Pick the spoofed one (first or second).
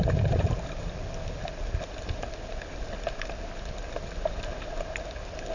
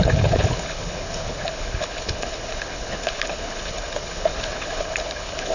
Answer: second